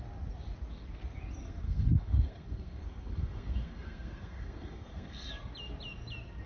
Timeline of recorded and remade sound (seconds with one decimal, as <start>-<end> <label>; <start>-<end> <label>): 0.0-1.4 recorded; 1.4-5.3 remade; 5.3-6.5 recorded